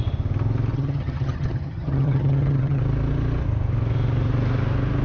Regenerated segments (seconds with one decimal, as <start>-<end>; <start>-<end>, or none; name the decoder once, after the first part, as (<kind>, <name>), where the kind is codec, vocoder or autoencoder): 0.7-2.8 (vocoder, HiFi-GAN)